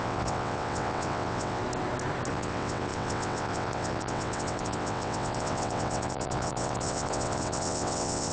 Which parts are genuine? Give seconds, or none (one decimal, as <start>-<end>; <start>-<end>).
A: 1.6-2.3